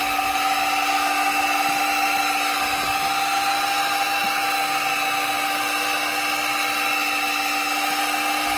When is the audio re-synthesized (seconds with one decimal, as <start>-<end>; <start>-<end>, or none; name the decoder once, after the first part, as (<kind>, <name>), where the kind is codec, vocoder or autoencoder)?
none